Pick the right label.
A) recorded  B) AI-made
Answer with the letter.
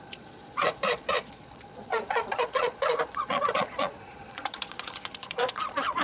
B